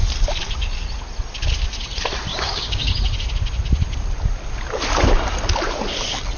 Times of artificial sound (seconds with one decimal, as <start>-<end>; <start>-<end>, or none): 2.3-2.9